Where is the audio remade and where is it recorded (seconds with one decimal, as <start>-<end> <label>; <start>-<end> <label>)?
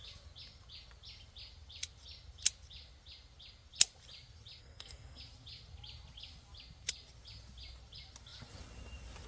0.0-4.6 recorded; 4.6-5.2 remade; 5.2-9.3 recorded